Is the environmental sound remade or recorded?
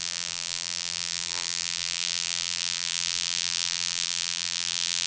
remade